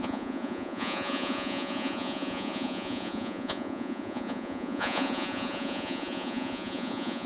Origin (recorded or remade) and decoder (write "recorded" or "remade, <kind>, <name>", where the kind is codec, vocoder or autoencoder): remade, vocoder, Vocos